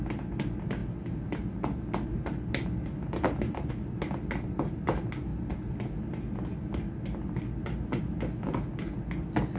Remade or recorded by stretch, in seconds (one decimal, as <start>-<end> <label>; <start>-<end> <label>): 0.0-9.6 recorded